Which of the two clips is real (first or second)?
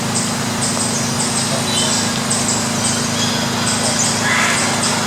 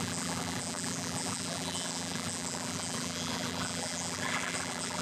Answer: first